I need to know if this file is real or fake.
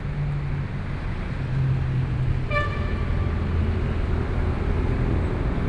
real